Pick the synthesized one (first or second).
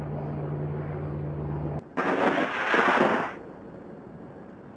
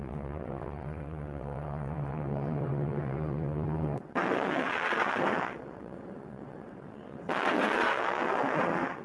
second